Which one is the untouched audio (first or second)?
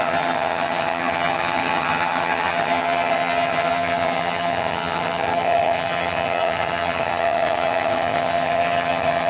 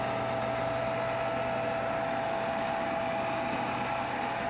second